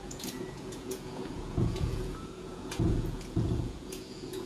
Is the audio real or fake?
fake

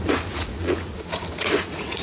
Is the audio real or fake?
fake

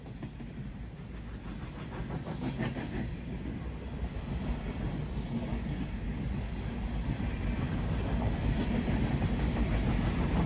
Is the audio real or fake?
real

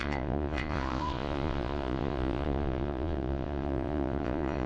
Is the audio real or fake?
fake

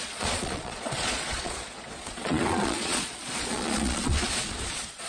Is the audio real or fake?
fake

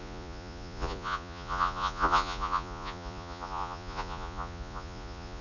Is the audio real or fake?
fake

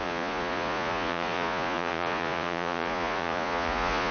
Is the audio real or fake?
fake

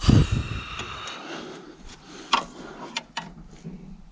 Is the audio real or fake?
real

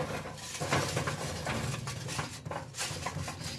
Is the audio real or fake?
real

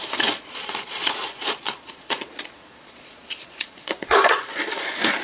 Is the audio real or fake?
fake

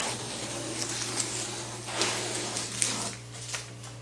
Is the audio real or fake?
real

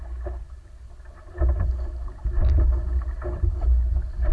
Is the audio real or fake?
real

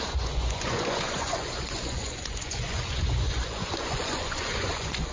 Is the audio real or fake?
fake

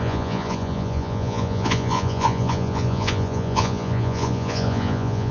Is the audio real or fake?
fake